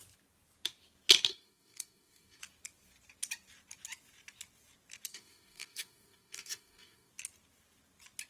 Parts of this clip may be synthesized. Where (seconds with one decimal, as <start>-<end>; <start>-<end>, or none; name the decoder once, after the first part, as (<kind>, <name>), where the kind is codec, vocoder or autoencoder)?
1.3-2.4 (codec, DAC); 5.1-7.1